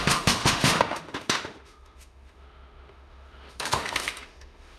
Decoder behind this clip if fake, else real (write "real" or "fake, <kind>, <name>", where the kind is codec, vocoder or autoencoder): fake, autoencoder, DAC-VAE